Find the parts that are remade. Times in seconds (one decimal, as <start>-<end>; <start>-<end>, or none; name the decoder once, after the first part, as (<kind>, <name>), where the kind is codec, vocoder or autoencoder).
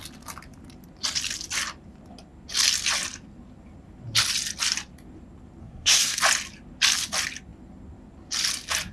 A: 5.6-6.2 (codec, SNAC)